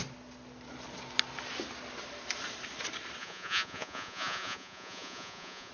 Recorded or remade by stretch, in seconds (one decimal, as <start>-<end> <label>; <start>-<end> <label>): 0.0-3.2 recorded; 3.2-5.7 remade